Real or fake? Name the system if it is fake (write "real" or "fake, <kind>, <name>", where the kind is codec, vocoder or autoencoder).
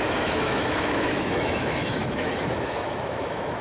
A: fake, autoencoder, DAC-VAE